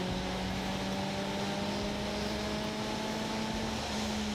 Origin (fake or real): real